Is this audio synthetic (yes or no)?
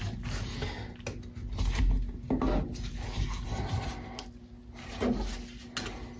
no